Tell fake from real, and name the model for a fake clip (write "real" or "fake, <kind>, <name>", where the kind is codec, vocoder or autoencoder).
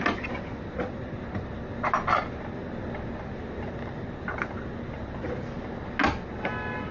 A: real